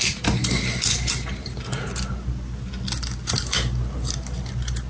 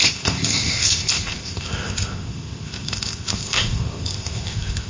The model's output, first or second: second